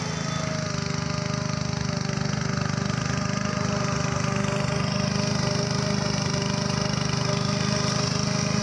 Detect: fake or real real